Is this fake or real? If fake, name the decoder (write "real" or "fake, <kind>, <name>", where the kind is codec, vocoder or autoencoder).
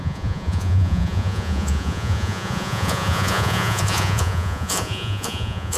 fake, vocoder, Vocos